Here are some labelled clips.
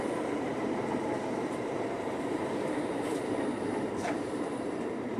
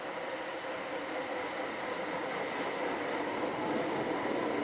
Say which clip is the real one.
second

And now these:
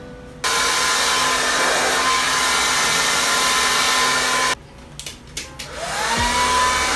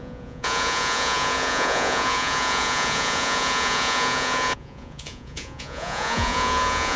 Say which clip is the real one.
first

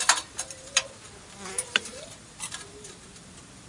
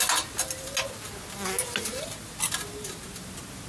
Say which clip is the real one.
second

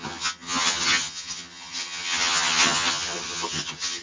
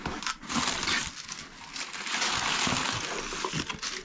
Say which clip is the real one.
second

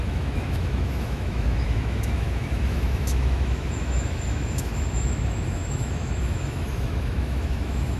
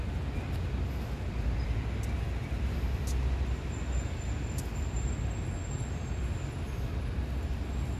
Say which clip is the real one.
second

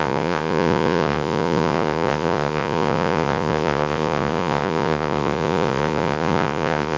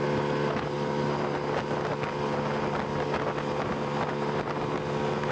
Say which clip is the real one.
second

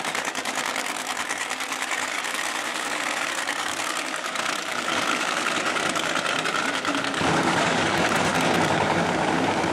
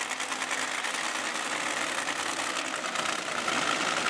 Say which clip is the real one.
second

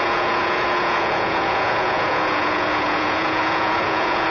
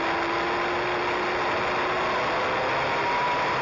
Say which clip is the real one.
second